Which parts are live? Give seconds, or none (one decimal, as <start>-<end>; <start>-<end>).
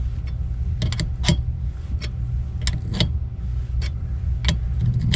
0.0-5.2